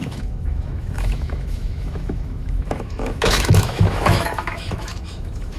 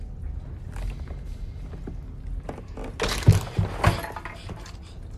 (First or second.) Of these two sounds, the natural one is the second